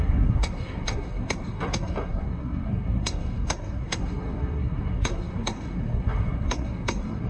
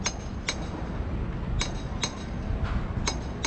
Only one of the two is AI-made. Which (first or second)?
first